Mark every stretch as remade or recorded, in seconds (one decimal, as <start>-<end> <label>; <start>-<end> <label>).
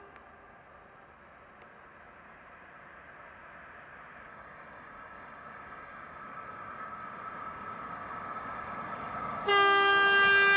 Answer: 0.0-4.3 recorded; 4.3-9.5 remade; 9.5-10.6 recorded